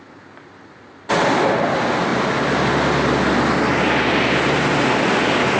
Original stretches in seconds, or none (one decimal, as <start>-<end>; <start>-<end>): 0.0-5.6